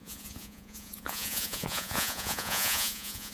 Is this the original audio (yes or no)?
no